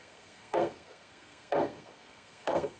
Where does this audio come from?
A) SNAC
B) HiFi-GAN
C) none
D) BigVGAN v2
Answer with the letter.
A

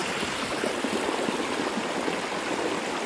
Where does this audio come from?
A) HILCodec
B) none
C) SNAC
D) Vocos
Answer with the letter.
B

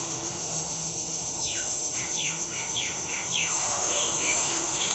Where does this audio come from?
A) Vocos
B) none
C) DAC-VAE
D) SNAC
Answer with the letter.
C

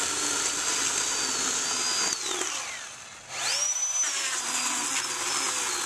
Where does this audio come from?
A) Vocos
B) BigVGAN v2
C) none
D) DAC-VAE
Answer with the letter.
C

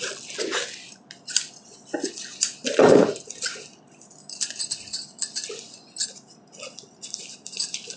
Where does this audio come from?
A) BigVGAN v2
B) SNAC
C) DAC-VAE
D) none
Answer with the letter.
D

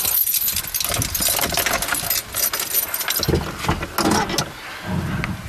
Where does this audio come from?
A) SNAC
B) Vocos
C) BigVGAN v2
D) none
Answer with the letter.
D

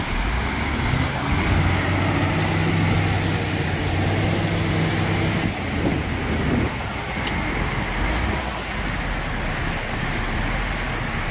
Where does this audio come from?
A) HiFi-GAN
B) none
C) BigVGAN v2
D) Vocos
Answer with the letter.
B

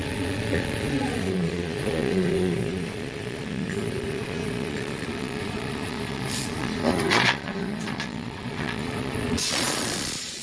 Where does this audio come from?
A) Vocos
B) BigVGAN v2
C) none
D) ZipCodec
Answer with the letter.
A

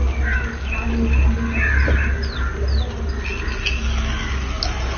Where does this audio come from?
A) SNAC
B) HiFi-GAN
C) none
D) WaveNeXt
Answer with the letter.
C